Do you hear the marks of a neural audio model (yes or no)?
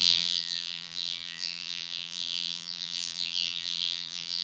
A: yes